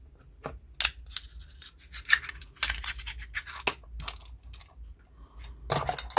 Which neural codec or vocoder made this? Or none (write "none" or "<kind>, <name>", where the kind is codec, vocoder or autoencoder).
none